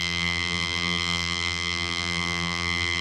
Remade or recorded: remade